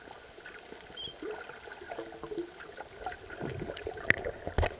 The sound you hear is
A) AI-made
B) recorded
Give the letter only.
B